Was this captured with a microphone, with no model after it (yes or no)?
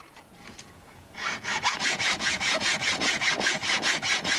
no